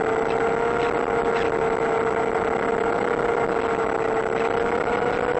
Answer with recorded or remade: recorded